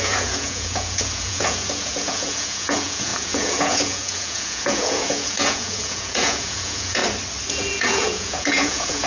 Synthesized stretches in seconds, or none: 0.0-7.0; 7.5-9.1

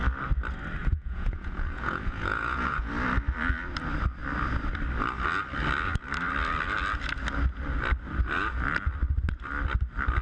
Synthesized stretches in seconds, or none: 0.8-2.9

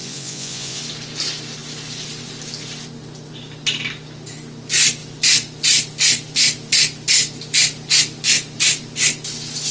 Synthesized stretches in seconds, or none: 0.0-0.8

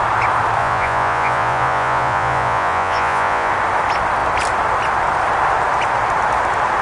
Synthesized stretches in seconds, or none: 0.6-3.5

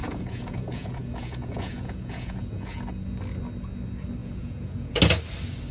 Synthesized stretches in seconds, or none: 0.0-2.8; 4.2-5.0

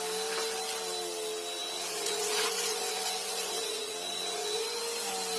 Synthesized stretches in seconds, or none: 1.6-4.8

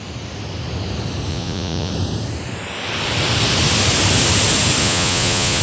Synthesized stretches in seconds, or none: 1.3-1.9; 4.8-5.6